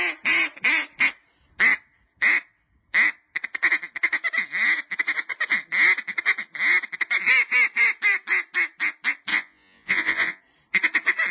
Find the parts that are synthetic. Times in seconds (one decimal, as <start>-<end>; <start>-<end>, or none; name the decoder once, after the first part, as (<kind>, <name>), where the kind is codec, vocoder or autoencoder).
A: 9.3-10.4 (vocoder, Vocos)